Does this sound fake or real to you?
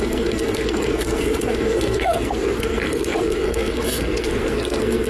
fake